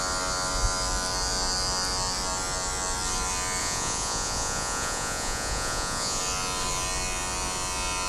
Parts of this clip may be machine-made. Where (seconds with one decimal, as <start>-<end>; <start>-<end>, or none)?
3.6-6.2